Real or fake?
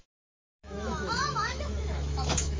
fake